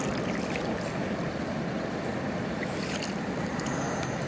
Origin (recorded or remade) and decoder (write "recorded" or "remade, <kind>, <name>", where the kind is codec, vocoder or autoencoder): recorded